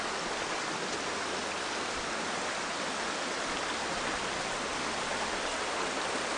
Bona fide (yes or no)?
yes